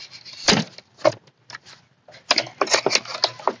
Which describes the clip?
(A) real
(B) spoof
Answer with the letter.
A